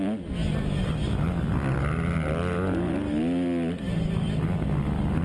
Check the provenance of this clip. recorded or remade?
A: recorded